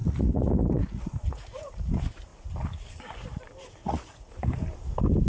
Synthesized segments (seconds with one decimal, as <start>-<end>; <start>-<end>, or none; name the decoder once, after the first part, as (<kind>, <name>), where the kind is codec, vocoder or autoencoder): 0.0-1.9 (vocoder, Vocos); 3.8-4.5